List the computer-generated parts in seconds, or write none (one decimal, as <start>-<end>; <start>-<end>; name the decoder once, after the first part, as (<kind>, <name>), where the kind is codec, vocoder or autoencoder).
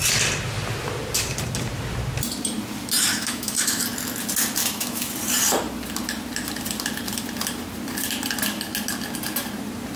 3.1-3.8 (autoencoder, DAC-VAE); 4.6-5.1